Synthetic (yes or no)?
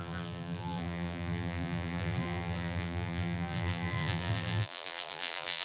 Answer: yes